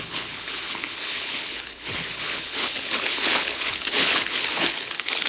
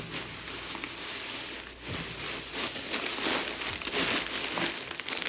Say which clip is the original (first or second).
second